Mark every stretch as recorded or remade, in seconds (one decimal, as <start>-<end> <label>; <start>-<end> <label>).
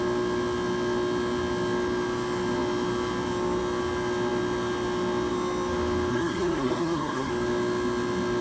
0.0-6.1 recorded; 6.1-7.3 remade; 7.3-8.4 recorded